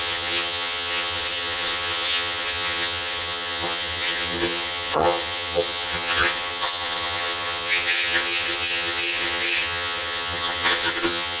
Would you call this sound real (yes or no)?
no